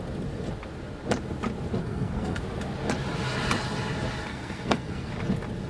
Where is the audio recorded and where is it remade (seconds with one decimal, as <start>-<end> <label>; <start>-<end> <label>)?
0.0-1.8 recorded; 1.8-2.4 remade; 2.4-4.3 recorded; 4.3-5.1 remade; 5.1-5.7 recorded